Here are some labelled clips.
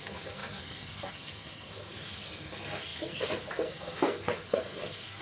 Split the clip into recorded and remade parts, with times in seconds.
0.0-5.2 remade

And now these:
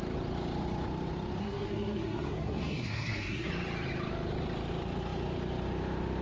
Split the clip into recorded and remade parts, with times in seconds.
0.0-1.4 recorded; 1.4-3.5 remade; 3.5-6.2 recorded

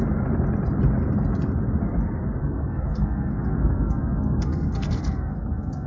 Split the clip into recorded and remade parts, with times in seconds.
0.0-2.4 recorded; 2.4-5.9 remade

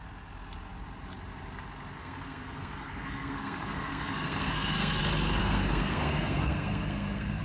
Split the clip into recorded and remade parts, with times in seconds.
0.0-2.0 recorded; 2.0-5.0 remade; 5.0-5.4 recorded; 5.4-7.4 remade

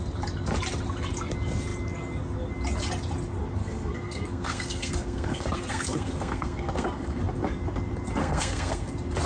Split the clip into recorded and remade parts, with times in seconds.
0.0-3.6 recorded; 3.6-7.2 remade; 7.2-8.2 recorded; 8.2-8.9 remade; 8.9-9.3 recorded

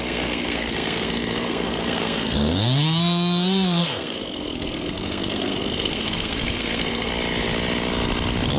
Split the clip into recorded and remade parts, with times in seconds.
0.0-7.1 remade; 7.1-8.6 recorded

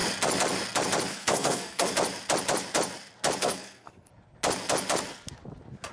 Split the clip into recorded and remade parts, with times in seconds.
0.0-1.1 recorded; 1.1-1.9 remade; 1.9-3.4 recorded; 3.4-4.1 remade; 4.1-5.9 recorded

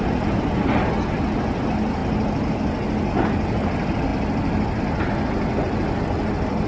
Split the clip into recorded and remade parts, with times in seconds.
0.0-6.7 recorded